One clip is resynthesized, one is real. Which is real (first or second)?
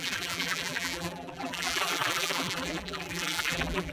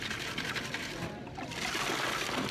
second